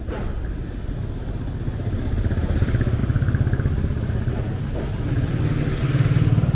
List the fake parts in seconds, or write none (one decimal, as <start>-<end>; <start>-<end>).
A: none